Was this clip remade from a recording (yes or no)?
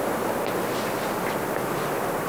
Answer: no